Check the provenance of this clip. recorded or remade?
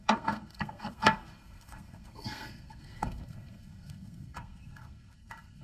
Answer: remade